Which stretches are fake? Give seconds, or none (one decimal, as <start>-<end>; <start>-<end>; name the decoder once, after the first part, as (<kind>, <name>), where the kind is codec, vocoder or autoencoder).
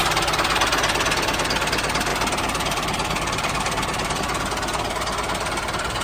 2.1-4.2 (vocoder, BigVGAN v2)